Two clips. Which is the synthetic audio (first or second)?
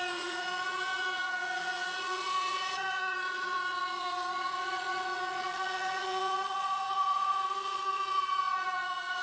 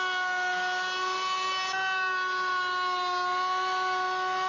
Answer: first